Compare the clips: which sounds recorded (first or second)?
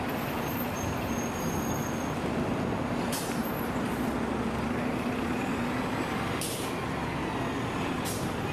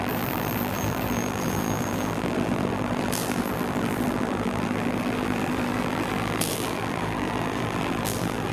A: first